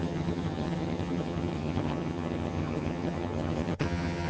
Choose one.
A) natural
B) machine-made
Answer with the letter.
B